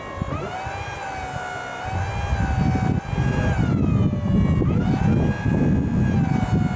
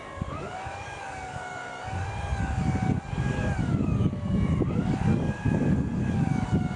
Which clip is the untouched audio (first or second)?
first